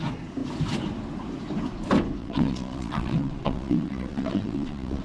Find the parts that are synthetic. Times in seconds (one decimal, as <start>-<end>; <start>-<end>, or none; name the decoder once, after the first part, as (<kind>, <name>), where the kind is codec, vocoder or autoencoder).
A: 2.2-5.0 (vocoder, WaveNeXt)